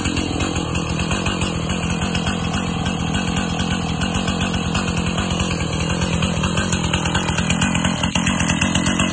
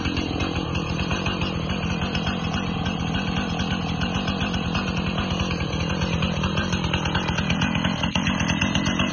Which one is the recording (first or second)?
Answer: first